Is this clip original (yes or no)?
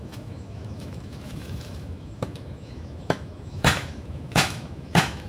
no